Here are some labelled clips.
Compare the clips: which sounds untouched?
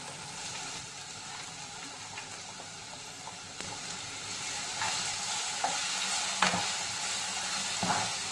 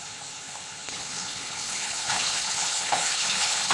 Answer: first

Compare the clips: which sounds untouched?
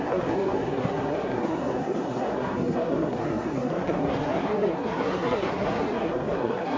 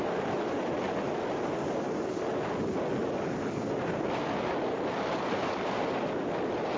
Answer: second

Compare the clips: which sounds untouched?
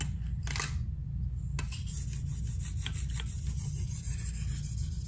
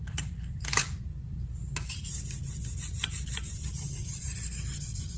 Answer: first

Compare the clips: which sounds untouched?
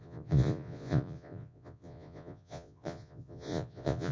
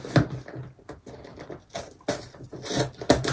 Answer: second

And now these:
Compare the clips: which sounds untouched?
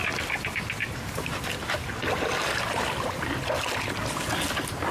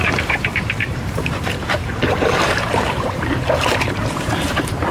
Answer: first